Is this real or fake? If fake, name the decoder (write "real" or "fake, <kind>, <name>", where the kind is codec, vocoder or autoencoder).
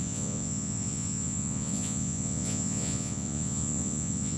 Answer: fake, vocoder, Vocos